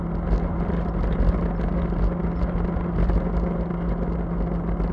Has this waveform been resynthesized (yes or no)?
no